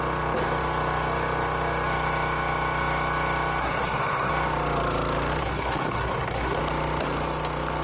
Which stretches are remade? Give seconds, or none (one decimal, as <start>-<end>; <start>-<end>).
3.6-4.3; 5.4-6.6